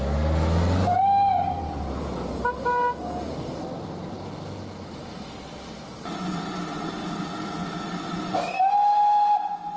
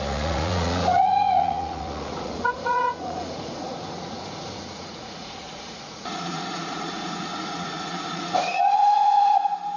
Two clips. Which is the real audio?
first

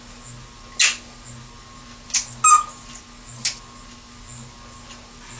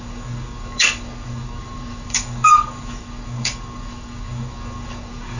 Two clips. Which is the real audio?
first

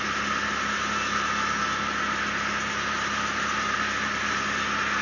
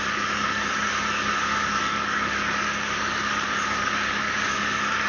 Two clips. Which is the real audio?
first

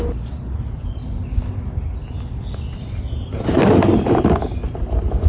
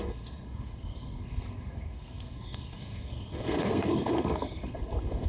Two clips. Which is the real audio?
first